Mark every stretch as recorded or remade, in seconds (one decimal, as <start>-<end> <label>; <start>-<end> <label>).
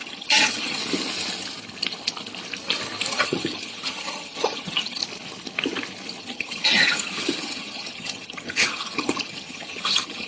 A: 0.0-0.8 remade; 0.8-3.1 recorded; 3.1-5.0 remade; 5.0-6.2 recorded; 6.2-10.3 remade